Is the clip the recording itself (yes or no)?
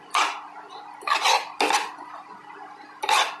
yes